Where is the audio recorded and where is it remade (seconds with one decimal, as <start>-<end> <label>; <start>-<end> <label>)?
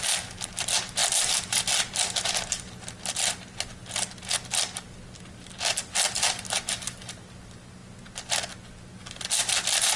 0.0-10.0 recorded